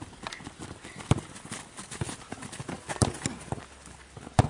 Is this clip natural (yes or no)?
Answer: yes